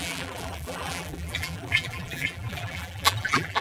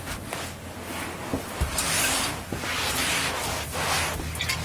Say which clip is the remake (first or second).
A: first